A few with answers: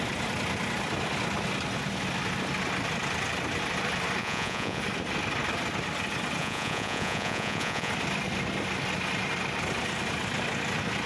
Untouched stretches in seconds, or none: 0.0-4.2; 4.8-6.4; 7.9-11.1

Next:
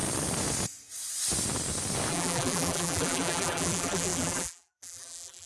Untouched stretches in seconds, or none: 0.0-2.1

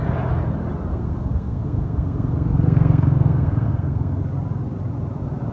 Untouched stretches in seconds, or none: 0.0-0.9; 4.2-5.5

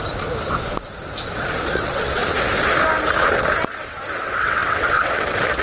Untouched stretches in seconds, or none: 0.0-1.7; 2.2-3.8

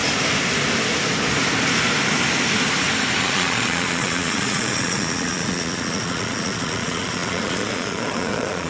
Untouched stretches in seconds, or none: 0.0-3.2